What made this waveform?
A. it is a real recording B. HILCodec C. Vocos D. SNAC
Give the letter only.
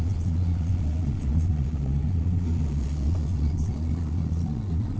C